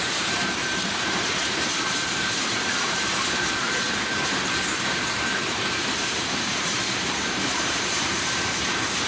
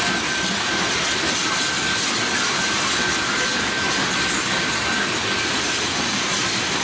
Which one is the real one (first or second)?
second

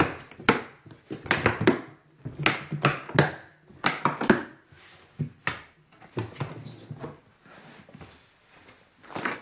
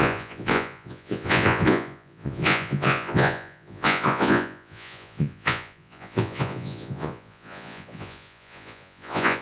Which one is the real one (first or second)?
first